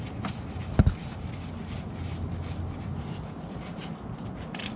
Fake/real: real